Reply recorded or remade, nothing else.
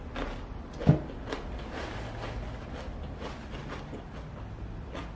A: recorded